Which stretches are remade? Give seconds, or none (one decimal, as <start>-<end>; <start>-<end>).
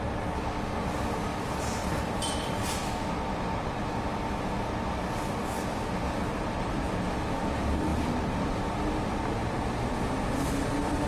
1.3-2.7; 7.9-8.5